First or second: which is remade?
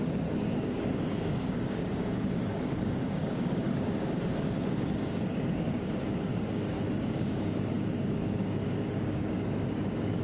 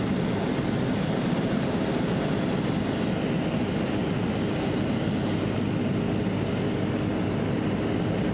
first